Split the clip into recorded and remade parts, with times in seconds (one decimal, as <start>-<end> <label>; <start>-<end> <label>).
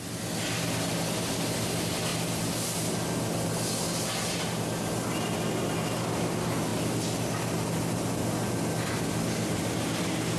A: 0.0-10.4 recorded